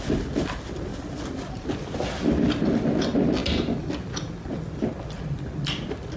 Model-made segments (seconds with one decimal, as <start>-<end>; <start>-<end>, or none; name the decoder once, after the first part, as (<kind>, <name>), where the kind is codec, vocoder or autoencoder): none